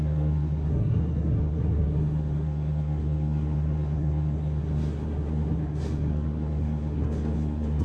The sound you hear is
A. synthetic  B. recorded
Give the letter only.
A